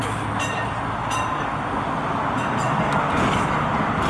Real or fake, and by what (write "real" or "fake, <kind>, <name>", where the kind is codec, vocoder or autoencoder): real